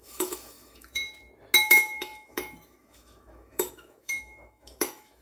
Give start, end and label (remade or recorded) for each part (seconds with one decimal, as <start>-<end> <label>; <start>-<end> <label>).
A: 0.0-1.0 remade; 1.0-1.6 recorded; 1.6-5.2 remade

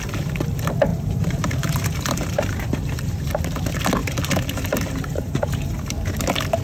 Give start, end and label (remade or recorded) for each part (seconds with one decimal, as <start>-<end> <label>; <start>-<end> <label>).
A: 0.0-0.9 recorded; 0.9-3.3 remade; 3.3-4.0 recorded; 4.0-5.9 remade; 5.9-6.6 recorded

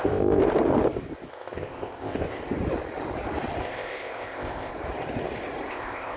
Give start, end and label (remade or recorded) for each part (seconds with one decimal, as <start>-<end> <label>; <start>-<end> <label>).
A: 0.0-0.4 remade; 0.4-1.3 recorded; 1.3-2.4 remade; 2.4-3.6 recorded; 3.6-4.7 remade; 4.7-5.7 recorded; 5.7-6.2 remade

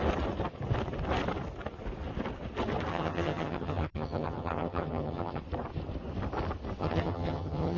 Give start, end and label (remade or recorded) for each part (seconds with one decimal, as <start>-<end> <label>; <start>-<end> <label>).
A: 0.0-2.9 recorded; 2.9-5.4 remade; 5.4-6.8 recorded; 6.8-7.8 remade

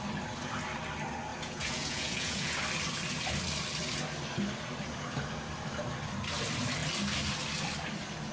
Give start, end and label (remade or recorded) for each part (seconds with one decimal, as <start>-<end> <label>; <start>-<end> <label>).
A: 0.0-1.3 recorded; 1.3-2.6 remade; 2.6-8.3 recorded

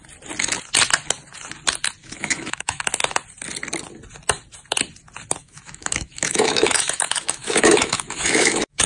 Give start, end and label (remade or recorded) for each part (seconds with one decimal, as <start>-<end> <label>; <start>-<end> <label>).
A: 0.0-2.0 recorded; 2.0-2.8 remade; 2.8-5.4 recorded; 5.4-8.9 remade

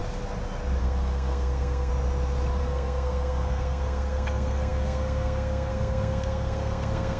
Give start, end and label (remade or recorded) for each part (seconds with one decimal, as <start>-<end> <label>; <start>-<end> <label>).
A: 0.0-0.8 recorded; 0.8-1.9 remade; 1.9-2.6 recorded; 2.6-7.2 remade

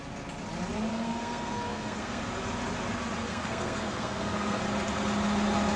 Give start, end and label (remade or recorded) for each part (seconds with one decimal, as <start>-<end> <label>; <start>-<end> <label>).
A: 0.0-0.9 recorded; 0.9-2.2 remade; 2.2-3.3 recorded; 3.3-4.6 remade; 4.6-5.8 recorded